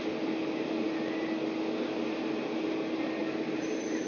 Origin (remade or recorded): recorded